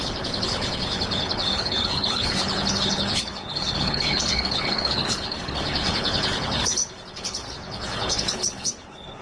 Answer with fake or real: fake